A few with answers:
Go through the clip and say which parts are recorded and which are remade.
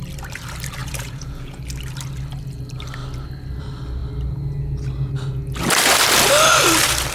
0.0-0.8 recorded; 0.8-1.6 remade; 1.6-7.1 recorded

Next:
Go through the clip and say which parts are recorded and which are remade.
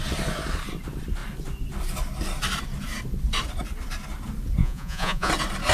0.0-4.6 recorded; 4.6-5.3 remade; 5.3-5.7 recorded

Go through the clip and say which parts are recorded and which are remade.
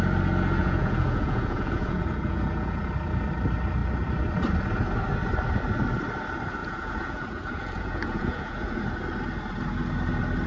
0.0-0.6 recorded; 0.6-2.9 remade; 2.9-6.6 recorded; 6.6-8.8 remade; 8.8-10.5 recorded